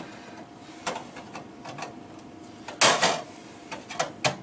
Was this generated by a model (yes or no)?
no